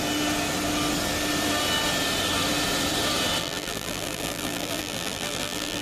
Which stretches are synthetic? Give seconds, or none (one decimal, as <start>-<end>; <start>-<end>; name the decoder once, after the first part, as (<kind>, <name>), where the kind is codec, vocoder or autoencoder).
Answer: 3.4-5.8 (vocoder, BigVGAN v2)